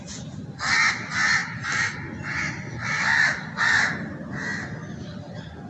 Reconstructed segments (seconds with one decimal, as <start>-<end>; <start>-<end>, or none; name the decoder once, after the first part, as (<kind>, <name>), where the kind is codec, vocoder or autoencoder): none